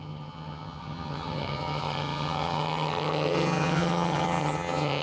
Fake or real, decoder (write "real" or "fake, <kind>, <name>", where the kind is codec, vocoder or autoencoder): fake, vocoder, HiFi-GAN